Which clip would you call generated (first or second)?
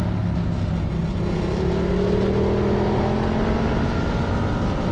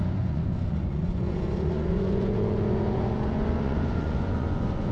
second